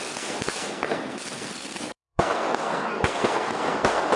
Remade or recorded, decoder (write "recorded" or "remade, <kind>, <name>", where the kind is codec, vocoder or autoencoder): remade, codec, SNAC